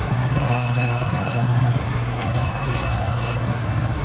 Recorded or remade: remade